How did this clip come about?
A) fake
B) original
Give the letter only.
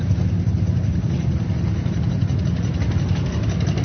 B